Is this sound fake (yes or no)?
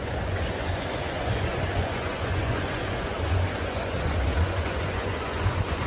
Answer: yes